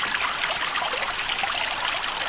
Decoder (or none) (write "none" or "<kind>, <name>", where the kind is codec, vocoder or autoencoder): none